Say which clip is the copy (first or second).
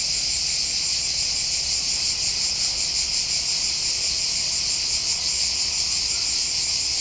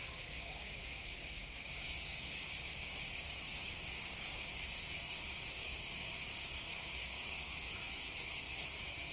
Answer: second